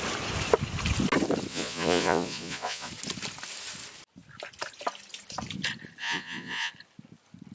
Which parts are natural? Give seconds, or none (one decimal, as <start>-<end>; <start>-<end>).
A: 0.0-1.5; 2.9-6.0; 6.7-7.5